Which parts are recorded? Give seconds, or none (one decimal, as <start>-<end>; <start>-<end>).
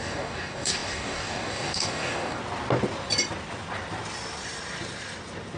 2.4-5.6